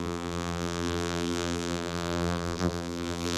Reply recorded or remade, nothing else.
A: remade